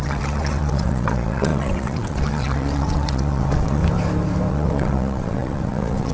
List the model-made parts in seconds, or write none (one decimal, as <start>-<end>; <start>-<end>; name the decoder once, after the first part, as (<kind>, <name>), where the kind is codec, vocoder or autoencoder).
0.0-3.8 (vocoder, WaveNeXt); 4.5-6.1